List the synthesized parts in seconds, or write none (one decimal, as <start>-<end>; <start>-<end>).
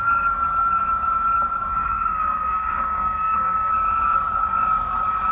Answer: 1.7-3.7